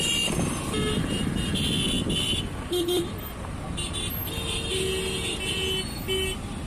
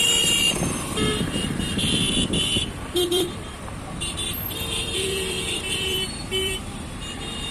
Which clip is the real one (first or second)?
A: first